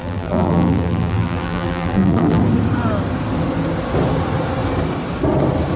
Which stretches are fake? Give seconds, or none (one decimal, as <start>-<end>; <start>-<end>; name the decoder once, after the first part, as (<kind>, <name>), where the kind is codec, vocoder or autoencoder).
0.0-2.4 (vocoder, BigVGAN v2)